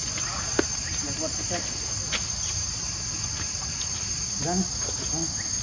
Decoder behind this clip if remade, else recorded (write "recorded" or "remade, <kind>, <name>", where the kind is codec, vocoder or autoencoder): recorded